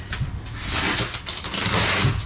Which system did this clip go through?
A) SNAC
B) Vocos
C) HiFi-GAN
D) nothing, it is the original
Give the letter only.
D